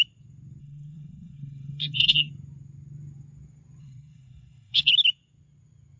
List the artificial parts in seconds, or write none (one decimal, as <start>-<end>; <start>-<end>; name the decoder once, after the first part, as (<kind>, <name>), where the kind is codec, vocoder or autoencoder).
0.6-2.3 (codec, SNAC); 3.8-4.9